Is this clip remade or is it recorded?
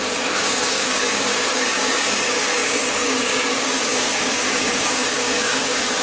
remade